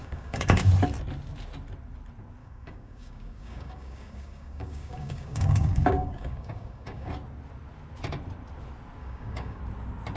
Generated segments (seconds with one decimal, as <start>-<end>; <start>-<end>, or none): 0.0-0.7; 2.4-7.1; 9.0-9.6